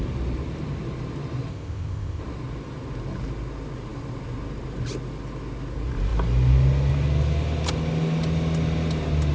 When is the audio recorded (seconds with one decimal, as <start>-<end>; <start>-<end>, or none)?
0.0-1.5; 2.2-9.3